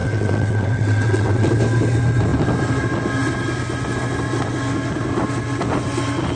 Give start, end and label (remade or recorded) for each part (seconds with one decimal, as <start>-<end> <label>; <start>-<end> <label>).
0.0-1.5 remade; 1.5-6.4 recorded